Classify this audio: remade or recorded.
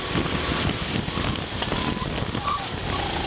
recorded